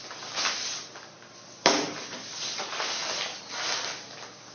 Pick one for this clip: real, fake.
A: real